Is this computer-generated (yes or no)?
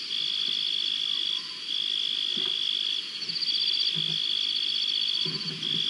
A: no